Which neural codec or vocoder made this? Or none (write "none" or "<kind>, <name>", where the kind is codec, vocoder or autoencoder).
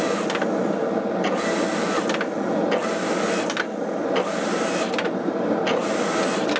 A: none